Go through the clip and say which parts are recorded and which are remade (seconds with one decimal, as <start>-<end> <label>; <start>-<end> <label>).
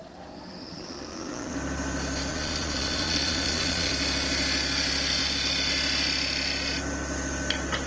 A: 0.0-0.6 recorded; 0.6-1.5 remade; 1.5-2.3 recorded; 2.3-3.9 remade; 3.9-7.9 recorded